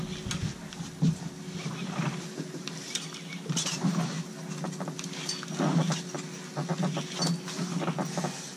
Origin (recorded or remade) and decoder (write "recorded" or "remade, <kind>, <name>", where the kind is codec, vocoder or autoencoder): recorded